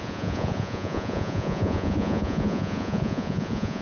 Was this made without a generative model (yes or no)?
no